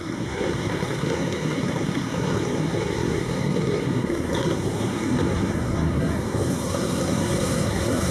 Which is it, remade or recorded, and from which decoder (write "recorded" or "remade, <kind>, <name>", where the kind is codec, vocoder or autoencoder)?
remade, codec, SNAC